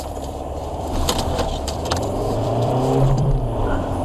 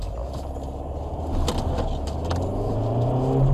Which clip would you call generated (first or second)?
first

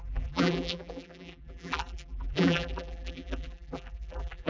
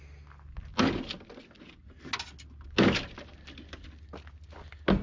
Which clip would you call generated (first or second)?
first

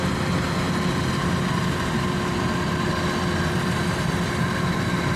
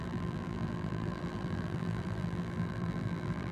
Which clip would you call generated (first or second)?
second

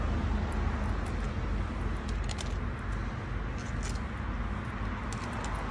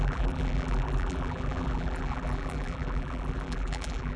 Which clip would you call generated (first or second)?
second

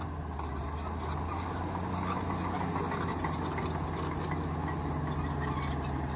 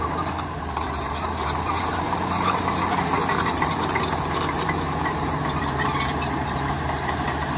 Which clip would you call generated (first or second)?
second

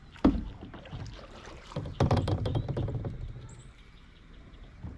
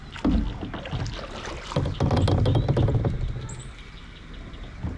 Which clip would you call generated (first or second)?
first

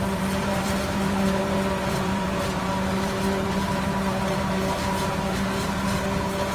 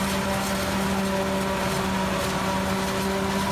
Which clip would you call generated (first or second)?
first